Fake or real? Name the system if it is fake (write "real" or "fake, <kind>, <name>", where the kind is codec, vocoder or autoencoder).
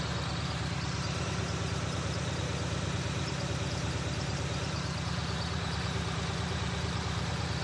fake, vocoder, BigVGAN v2